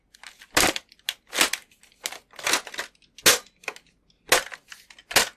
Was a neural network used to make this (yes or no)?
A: no